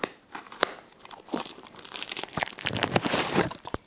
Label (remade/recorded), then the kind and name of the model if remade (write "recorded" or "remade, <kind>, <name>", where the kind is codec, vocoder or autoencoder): remade, vocoder, BigVGAN v2